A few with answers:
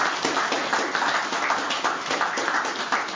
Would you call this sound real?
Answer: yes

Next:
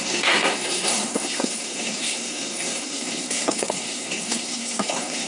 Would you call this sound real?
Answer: no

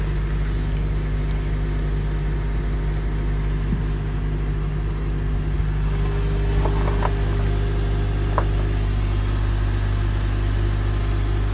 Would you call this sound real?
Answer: yes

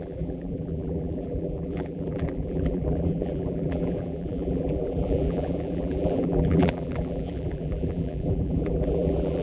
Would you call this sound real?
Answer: no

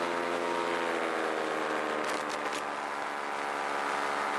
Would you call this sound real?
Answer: yes